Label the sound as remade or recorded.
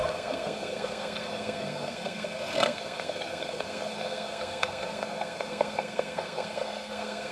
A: remade